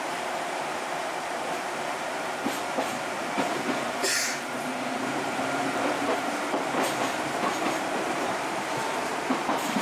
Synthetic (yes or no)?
yes